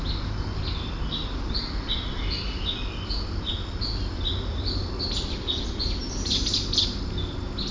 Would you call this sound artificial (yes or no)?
no